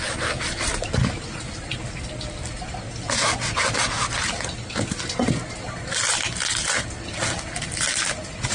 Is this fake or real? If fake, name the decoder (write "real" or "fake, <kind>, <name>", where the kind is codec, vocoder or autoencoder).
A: real